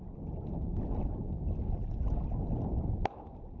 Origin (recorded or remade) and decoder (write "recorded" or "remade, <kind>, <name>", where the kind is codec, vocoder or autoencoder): recorded